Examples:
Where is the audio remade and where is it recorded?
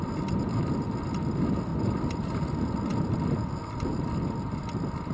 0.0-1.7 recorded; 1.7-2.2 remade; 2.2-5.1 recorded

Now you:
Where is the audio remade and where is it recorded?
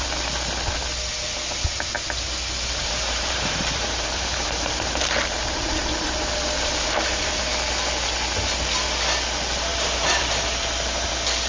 0.0-2.8 recorded; 2.8-7.4 remade; 7.4-9.7 recorded; 9.7-11.1 remade; 11.1-11.5 recorded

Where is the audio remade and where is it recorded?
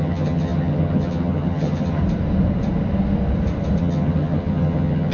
0.0-2.0 remade; 2.0-3.8 recorded; 3.8-5.1 remade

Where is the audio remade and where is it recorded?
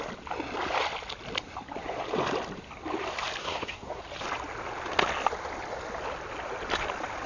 0.0-3.4 recorded; 3.4-4.0 remade; 4.0-7.3 recorded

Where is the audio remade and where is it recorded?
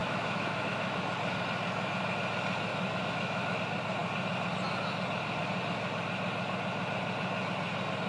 0.0-1.0 remade; 1.0-2.7 recorded; 2.7-3.6 remade; 3.6-8.1 recorded